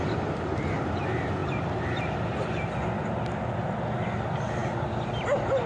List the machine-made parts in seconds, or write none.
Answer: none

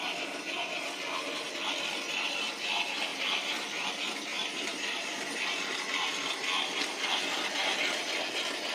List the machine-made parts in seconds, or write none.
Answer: 3.1-3.9 (vocoder, BigVGAN v2); 4.3-5.4

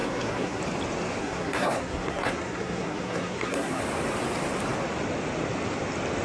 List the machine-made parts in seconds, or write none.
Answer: 0.0-0.6 (codec, SNAC); 1.2-3.8

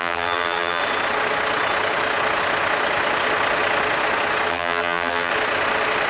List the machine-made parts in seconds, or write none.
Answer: 0.0-0.8 (vocoder, BigVGAN v2); 4.5-5.3

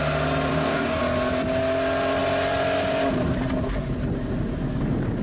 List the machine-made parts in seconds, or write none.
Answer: 0.5-1.0 (codec, DAC)

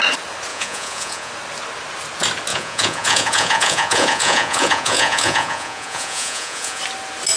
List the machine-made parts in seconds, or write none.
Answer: 0.5-1.3 (vocoder, Vocos); 2.5-6.8

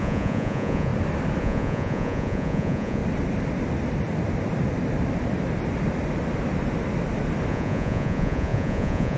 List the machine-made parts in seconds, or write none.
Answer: 0.0-0.9 (vocoder, Vocos); 1.4-3.0; 7.5-9.2

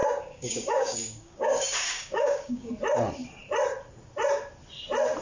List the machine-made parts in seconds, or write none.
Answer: 0.0-2.7 (codec, DAC)